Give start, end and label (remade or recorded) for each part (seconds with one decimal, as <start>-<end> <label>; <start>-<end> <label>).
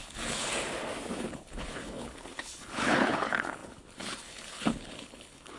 0.0-0.5 remade; 0.5-1.1 recorded; 1.1-5.6 remade